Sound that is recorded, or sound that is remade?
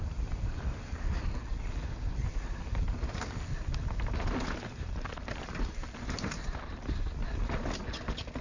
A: recorded